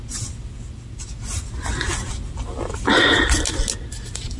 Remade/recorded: recorded